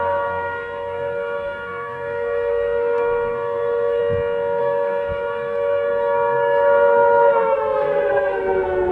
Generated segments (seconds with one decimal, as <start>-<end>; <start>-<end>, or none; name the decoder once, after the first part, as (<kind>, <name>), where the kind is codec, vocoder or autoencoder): 0.0-4.0 (codec, SNAC); 4.6-8.9